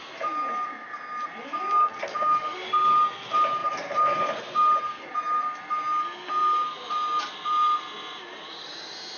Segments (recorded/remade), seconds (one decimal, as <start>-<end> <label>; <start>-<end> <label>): 0.0-2.1 recorded; 2.1-2.7 remade; 2.7-9.2 recorded